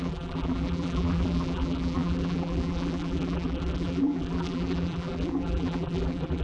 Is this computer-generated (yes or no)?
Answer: yes